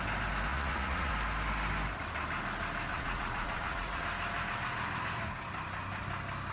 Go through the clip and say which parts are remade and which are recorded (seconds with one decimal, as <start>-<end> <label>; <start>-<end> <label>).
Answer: 0.0-0.5 recorded; 0.5-1.1 remade; 1.1-2.9 recorded; 2.9-4.0 remade; 4.0-6.5 recorded